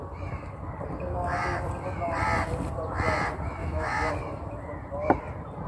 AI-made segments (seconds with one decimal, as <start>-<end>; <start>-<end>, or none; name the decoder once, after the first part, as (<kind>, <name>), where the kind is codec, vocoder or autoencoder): 3.6-4.1 (autoencoder, DAC-VAE)